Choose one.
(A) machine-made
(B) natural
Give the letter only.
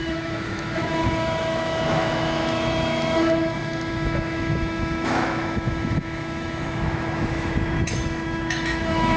A